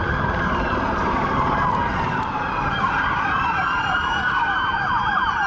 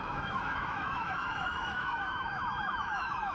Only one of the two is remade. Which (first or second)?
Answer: second